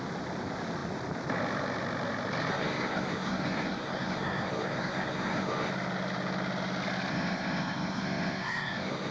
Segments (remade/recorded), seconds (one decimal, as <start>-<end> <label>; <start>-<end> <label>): 0.0-2.5 recorded; 2.5-5.7 remade; 5.7-7.1 recorded; 7.1-9.1 remade

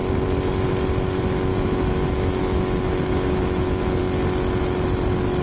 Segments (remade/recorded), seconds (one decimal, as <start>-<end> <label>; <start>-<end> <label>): 0.0-1.5 recorded; 1.5-4.0 remade; 4.0-5.4 recorded

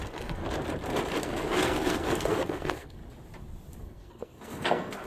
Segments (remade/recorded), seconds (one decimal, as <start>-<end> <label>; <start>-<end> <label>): 0.0-0.4 remade; 0.4-1.2 recorded; 1.2-3.0 remade; 3.0-3.8 recorded; 3.8-5.1 remade

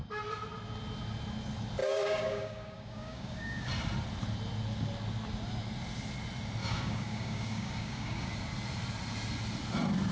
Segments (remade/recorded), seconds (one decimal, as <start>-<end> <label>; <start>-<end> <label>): 0.0-1.8 recorded; 1.8-3.7 remade; 3.7-6.6 recorded; 6.6-8.3 remade; 8.3-10.1 recorded

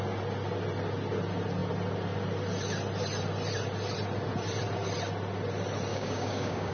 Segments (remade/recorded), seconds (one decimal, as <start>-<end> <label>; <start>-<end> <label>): 0.0-5.9 recorded; 5.9-6.7 remade

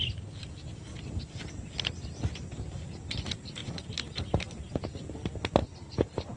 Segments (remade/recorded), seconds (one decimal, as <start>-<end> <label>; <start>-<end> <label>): 0.0-6.4 recorded

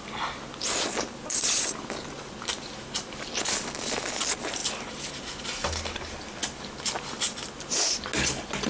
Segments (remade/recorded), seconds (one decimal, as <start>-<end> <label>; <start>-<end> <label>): 0.0-8.7 recorded

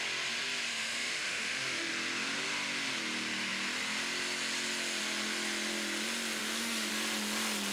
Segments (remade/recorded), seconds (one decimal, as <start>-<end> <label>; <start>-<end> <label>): 0.0-0.7 recorded; 0.7-1.9 remade; 1.9-6.4 recorded; 6.4-6.9 remade; 6.9-7.7 recorded